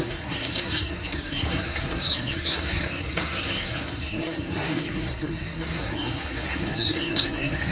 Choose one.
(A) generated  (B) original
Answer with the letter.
A